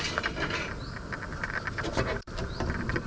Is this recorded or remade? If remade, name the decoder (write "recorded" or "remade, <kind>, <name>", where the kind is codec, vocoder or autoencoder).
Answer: remade, vocoder, BigVGAN v2